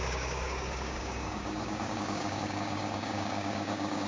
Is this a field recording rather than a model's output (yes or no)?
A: no